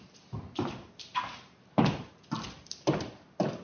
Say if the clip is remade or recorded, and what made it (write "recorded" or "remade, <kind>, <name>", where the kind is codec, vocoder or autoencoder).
recorded